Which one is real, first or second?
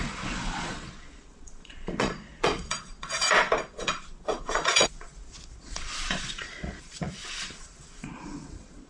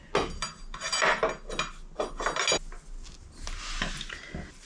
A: second